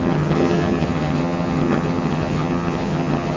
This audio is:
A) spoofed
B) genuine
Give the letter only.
A